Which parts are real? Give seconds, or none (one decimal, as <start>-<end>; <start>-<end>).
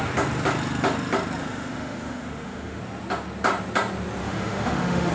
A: 0.0-1.4; 2.8-4.2